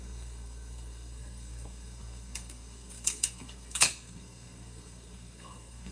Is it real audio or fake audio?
fake